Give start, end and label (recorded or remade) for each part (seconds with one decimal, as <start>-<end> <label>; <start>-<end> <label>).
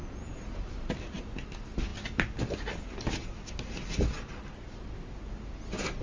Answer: 0.0-6.0 recorded